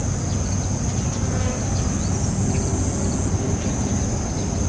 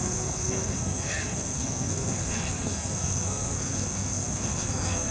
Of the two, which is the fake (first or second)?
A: second